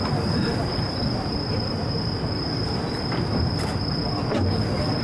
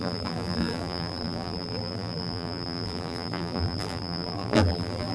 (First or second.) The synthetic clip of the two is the second